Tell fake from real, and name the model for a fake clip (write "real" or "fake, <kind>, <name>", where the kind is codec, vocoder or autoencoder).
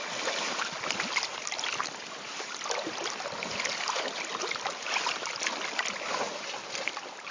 real